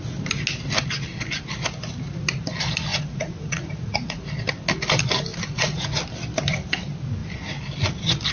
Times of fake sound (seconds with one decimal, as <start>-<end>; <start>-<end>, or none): 2.9-4.2; 5.3-6.0